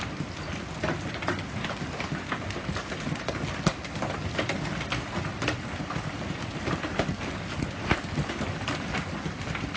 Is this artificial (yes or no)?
no